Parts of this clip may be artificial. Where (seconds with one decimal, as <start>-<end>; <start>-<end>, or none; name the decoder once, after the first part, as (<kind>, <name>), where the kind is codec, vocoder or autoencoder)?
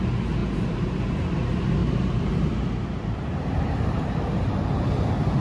0.4-1.0 (vocoder, BigVGAN v2); 1.8-5.0